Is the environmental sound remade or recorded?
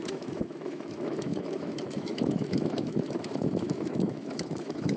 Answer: remade